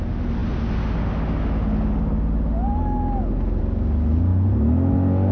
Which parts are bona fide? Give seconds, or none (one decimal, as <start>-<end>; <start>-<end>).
0.0-5.3

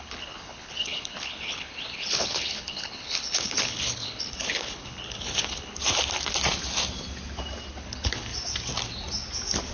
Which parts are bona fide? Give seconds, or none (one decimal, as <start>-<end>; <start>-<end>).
5.8-7.7; 8.3-9.7

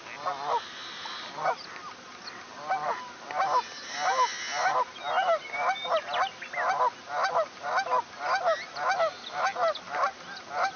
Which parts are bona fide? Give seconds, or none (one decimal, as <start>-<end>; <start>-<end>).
0.0-10.8

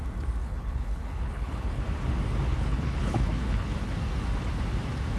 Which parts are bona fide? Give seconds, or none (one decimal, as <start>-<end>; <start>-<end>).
0.0-0.4; 1.8-2.5; 3.9-5.2

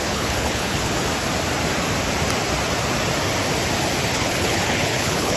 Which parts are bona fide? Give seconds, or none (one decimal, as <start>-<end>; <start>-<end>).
1.0-4.1